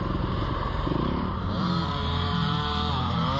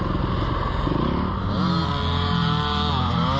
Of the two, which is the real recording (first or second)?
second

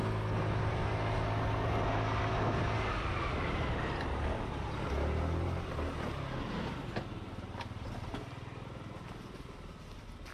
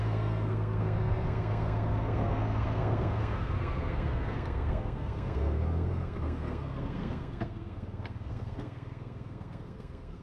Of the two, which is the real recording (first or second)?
first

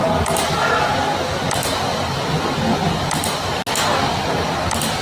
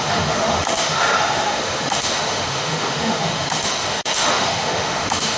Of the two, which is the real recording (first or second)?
first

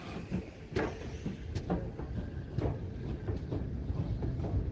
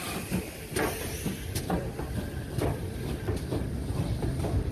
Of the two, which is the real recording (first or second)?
first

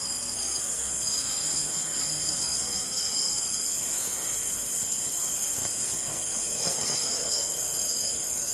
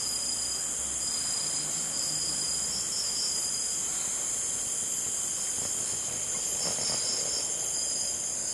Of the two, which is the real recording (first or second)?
second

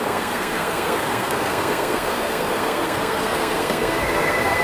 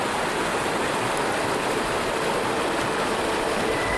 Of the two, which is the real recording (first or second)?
second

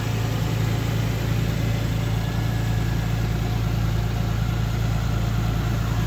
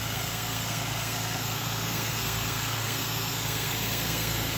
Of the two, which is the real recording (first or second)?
first